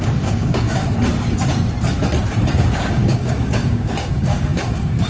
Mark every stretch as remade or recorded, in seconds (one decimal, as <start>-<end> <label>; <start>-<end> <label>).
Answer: 0.0-0.8 remade; 0.8-2.6 recorded; 2.6-5.1 remade